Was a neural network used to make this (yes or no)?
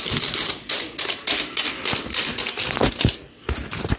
no